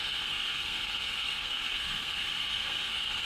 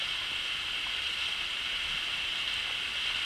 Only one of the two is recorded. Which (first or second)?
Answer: second